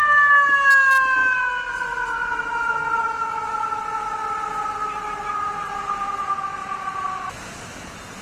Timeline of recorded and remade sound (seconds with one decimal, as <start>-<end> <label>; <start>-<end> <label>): 0.0-1.2 recorded; 1.2-2.3 remade; 2.3-8.2 recorded